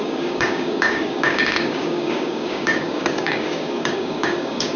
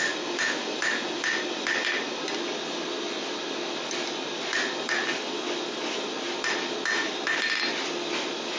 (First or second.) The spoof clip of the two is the first